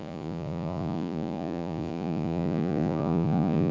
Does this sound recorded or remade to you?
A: remade